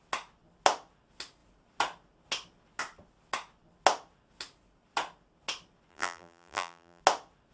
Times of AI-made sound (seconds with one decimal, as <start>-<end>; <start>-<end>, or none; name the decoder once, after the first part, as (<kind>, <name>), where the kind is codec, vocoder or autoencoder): 5.9-7.0 (vocoder, BigVGAN v2)